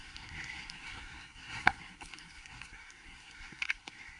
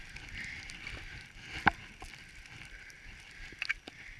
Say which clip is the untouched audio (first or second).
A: second